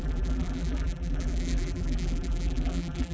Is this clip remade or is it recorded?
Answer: remade